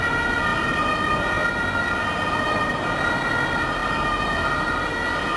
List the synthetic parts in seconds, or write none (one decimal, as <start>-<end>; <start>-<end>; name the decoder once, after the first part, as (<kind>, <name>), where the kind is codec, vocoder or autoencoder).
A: none